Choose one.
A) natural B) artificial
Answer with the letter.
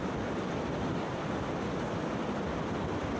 A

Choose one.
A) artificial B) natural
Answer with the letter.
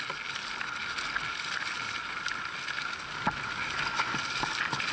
B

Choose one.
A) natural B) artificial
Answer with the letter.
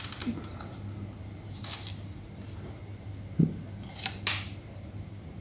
A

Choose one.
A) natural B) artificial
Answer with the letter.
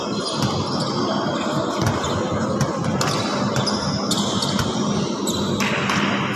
A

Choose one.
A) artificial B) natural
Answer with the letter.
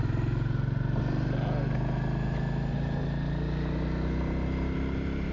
B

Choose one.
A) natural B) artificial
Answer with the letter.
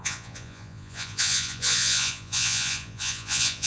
B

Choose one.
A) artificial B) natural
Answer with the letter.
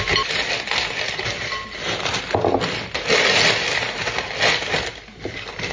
B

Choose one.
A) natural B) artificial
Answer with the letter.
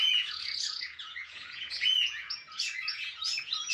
B